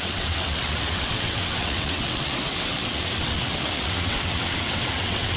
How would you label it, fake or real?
fake